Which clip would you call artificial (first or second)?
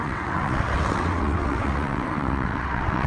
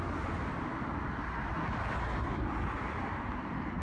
first